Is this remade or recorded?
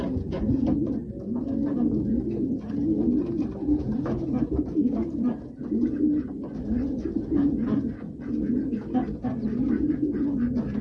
recorded